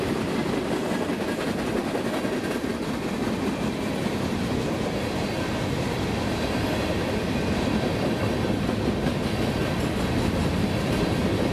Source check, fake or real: real